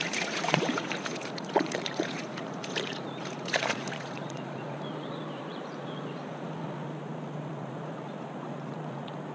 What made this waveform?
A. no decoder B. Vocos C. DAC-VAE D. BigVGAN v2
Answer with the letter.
B